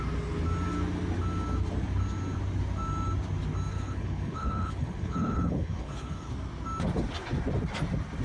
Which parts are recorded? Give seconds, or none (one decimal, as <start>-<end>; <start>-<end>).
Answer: 0.0-3.7; 6.3-8.2